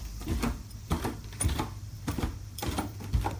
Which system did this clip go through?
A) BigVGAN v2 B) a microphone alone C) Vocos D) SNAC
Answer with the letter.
A